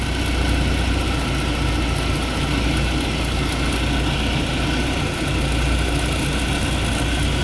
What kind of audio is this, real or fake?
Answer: real